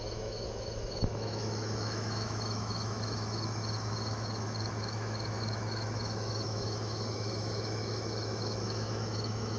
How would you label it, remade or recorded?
remade